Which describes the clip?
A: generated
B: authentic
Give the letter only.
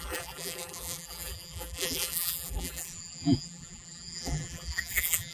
A